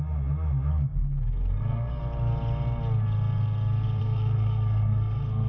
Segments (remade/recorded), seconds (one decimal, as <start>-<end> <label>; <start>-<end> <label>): 0.0-0.7 recorded; 0.7-2.0 remade; 2.0-4.0 recorded; 4.0-5.5 remade